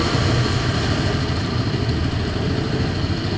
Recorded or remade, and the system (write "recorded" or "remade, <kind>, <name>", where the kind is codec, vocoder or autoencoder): recorded